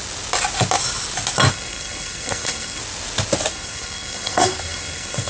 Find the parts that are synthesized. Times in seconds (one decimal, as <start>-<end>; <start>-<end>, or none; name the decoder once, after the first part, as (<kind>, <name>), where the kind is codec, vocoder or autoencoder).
1.5-2.8 (codec, SNAC); 3.5-5.3